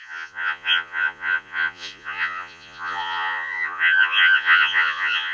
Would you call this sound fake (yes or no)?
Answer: yes